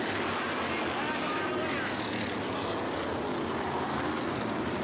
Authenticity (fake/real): real